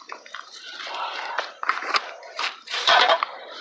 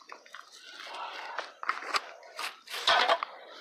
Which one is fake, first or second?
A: first